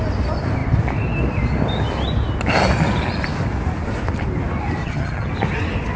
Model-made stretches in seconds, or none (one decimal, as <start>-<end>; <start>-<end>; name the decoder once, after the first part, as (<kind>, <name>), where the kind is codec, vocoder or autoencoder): 4.8-5.3 (vocoder, HiFi-GAN)